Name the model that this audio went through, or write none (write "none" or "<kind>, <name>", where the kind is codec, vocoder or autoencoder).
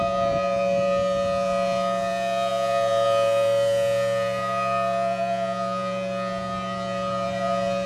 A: vocoder, Vocos